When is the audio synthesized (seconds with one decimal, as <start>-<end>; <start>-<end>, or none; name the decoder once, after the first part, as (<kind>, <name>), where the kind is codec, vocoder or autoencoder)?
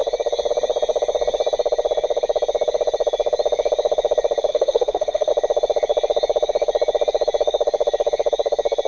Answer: 4.5-5.3 (codec, SNAC)